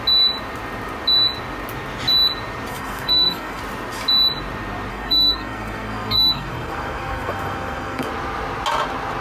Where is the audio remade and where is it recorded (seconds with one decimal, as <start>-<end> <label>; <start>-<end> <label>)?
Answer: 0.0-2.7 recorded; 2.7-3.6 remade; 3.6-4.9 recorded; 4.9-8.1 remade; 8.1-9.2 recorded